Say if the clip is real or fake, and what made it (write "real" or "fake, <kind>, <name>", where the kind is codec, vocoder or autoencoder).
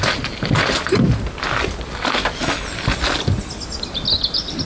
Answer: real